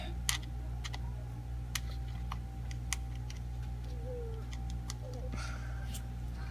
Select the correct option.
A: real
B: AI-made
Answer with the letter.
A